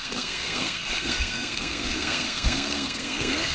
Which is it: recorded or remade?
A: remade